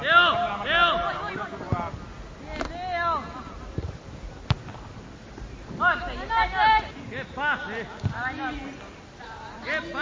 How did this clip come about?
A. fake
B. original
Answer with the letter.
B